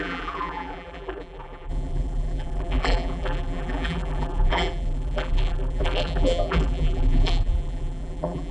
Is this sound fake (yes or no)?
yes